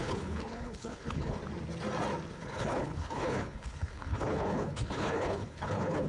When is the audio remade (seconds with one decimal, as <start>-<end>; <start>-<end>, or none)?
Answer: 0.0-1.4; 2.3-6.1